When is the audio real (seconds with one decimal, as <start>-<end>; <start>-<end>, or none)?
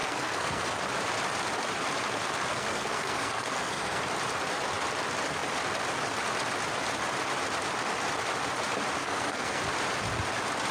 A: 0.9-2.5; 4.0-9.0; 9.6-10.7